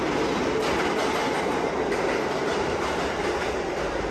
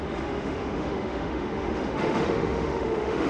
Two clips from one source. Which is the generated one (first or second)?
second